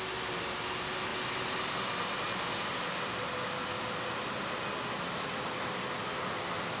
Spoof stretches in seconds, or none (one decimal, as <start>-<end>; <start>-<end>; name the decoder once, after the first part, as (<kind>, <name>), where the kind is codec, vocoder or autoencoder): none